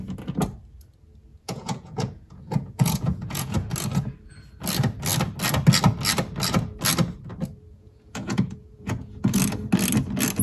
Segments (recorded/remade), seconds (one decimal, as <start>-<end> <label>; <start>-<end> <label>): 0.0-1.3 recorded; 1.3-3.7 remade; 3.7-7.7 recorded; 7.7-9.4 remade; 9.4-10.4 recorded